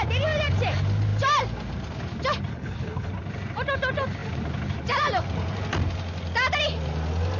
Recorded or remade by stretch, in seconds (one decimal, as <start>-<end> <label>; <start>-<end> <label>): 0.0-2.5 recorded; 2.5-3.1 remade; 3.1-7.4 recorded